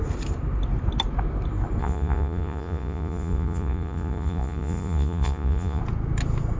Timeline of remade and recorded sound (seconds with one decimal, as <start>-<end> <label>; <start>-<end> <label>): 0.0-1.8 recorded; 1.8-5.8 remade; 5.8-6.6 recorded